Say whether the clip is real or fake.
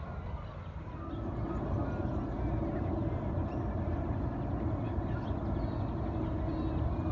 real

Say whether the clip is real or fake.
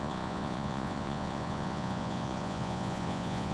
fake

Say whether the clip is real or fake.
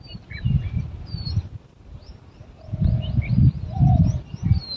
real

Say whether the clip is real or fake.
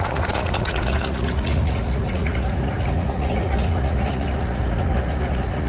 fake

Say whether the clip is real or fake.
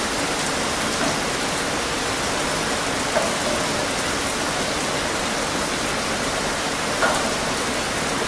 real